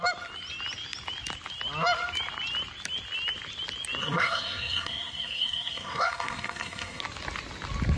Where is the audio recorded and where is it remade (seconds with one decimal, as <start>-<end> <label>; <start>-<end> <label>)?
0.0-4.0 recorded; 4.0-7.0 remade; 7.0-8.0 recorded